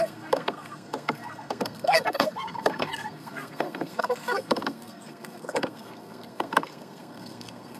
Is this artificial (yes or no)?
yes